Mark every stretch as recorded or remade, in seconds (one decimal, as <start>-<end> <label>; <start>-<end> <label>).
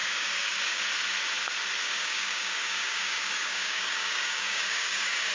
0.0-0.8 remade; 0.8-1.8 recorded; 1.8-5.3 remade